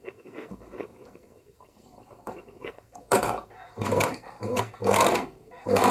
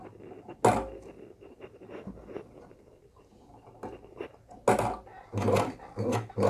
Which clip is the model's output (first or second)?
first